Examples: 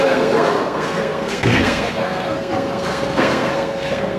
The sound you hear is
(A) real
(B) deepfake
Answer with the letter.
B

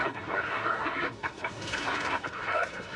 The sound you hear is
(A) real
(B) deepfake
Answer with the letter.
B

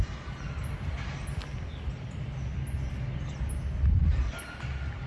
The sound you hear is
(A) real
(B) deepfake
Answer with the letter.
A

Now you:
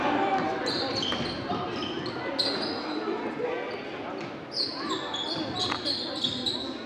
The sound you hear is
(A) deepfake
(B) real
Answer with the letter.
B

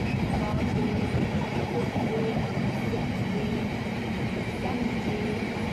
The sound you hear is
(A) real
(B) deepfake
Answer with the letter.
A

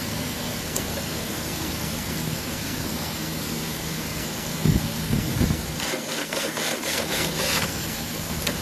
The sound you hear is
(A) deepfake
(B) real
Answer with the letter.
A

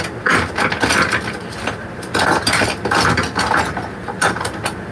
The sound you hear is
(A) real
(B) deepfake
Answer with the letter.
A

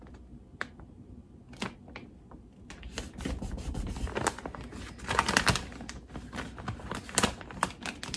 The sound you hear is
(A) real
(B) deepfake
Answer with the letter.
A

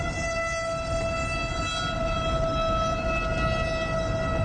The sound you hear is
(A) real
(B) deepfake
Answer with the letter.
A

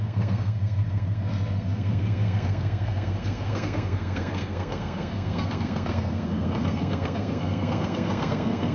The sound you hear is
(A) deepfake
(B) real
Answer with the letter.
A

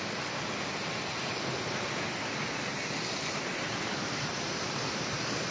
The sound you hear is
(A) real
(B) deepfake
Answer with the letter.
A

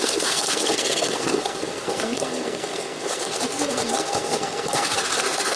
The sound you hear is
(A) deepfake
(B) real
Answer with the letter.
A